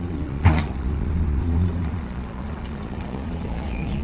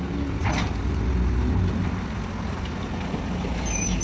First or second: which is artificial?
first